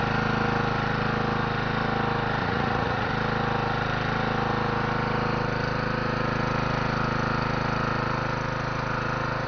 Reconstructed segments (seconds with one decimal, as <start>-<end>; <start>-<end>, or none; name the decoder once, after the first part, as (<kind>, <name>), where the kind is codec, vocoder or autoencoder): 2.4-3.1 (vocoder, Vocos)